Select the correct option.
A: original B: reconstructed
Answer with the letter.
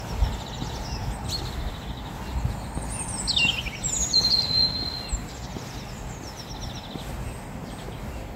A